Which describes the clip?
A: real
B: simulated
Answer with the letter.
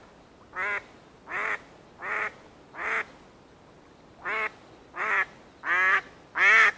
A